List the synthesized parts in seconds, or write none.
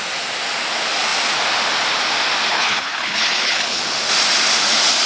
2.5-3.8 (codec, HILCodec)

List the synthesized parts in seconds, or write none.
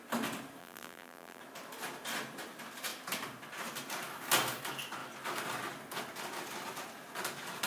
0.6-1.4 (vocoder, BigVGAN v2)